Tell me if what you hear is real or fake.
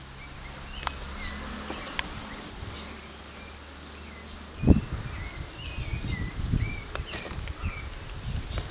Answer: real